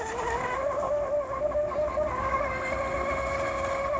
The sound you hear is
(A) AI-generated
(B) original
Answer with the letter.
B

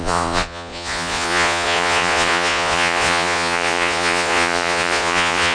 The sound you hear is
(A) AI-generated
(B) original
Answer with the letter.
A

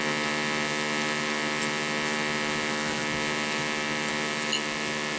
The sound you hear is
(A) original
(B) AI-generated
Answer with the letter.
A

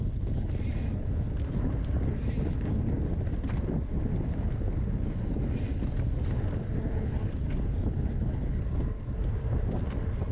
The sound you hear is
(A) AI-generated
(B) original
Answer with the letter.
B